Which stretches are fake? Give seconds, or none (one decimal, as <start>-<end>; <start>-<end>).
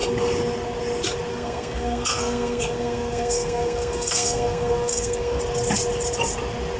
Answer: 1.3-5.4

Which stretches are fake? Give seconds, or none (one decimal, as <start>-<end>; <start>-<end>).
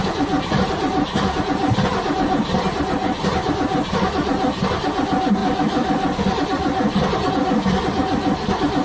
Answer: 1.9-2.4; 5.4-7.3